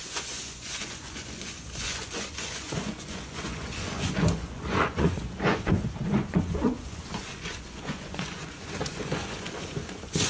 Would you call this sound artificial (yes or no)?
yes